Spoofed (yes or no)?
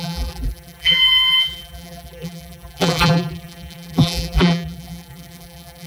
yes